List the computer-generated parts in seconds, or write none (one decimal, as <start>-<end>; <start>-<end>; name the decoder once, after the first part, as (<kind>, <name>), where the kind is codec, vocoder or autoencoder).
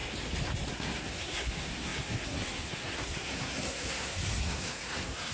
0.7-5.3 (codec, SNAC)